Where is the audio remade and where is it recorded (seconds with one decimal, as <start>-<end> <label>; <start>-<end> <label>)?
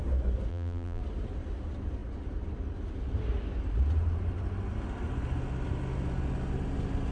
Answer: 0.0-0.5 recorded; 0.5-1.0 remade; 1.0-7.1 recorded